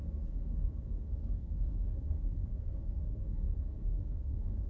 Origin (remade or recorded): remade